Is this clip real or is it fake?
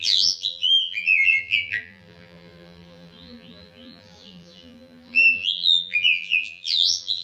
fake